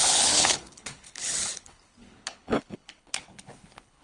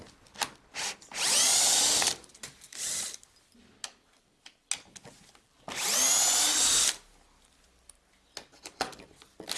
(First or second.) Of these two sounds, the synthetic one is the first